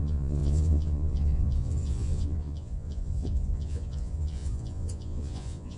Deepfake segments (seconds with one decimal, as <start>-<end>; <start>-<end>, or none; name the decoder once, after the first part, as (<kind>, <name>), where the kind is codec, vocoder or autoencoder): 0.0-5.8 (vocoder, Vocos)